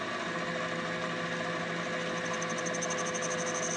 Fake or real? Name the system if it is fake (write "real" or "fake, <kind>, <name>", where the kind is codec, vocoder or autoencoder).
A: real